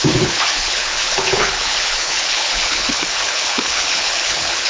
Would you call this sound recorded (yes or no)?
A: no